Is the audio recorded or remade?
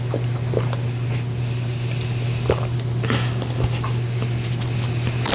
recorded